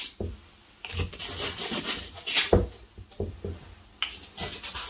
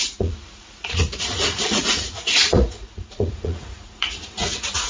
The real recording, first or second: first